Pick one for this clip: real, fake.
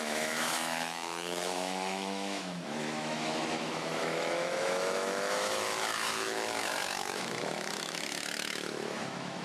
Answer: fake